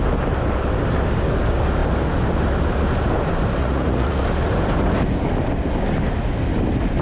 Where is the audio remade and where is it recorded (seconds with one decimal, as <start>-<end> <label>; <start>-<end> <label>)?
0.0-3.6 recorded; 3.6-4.2 remade; 4.2-7.0 recorded